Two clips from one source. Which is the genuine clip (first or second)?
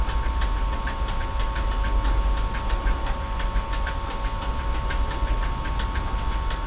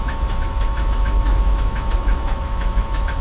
first